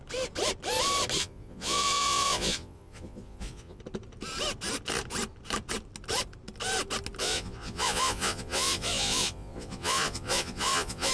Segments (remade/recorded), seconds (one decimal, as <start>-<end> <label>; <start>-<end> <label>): 0.0-1.2 recorded; 1.2-3.8 remade; 3.8-7.2 recorded; 7.2-11.1 remade